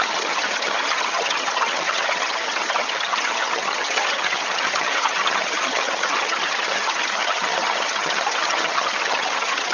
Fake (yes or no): yes